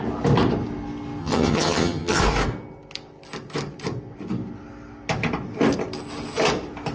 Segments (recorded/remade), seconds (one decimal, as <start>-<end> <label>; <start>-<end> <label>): 0.0-1.2 recorded; 1.2-2.2 remade; 2.2-6.9 recorded